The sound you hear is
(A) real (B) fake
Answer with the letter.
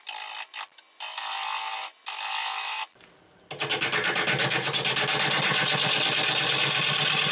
A